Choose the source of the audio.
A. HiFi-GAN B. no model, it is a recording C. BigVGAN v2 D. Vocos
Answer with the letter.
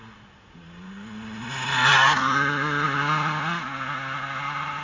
B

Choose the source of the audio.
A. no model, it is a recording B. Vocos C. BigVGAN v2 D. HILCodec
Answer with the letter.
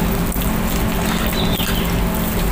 A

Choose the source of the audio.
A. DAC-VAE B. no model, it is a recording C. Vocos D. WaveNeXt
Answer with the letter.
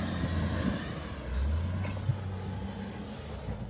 B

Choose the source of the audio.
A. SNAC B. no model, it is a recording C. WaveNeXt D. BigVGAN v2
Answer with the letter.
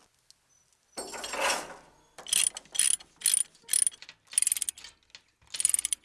B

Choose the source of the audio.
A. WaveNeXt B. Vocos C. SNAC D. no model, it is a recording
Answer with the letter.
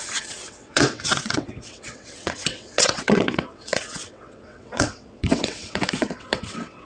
A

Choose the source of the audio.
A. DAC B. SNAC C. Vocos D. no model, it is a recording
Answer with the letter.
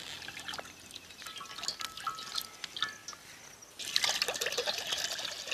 D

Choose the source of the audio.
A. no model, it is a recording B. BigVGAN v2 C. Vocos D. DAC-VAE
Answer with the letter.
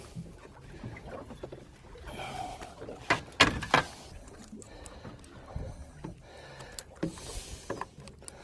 A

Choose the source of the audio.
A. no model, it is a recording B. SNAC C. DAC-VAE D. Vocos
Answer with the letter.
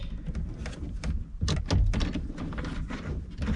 A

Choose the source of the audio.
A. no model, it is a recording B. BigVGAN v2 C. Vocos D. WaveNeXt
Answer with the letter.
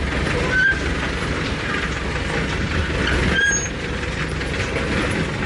A